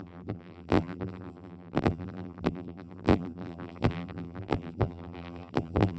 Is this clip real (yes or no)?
no